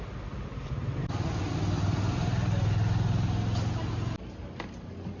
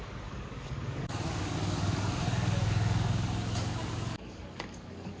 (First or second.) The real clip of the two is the first